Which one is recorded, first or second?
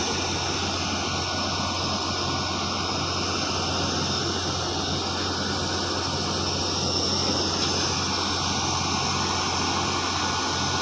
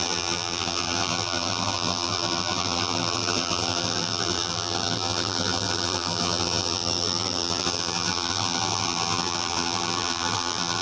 first